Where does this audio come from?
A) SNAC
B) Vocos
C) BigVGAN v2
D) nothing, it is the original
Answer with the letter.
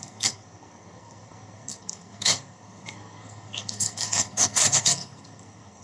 A